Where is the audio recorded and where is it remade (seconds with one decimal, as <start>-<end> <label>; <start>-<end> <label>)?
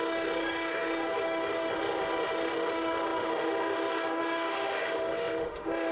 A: 0.0-5.9 remade